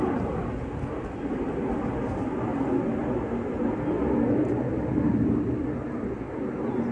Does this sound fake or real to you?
real